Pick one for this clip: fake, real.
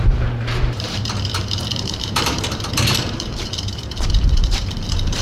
fake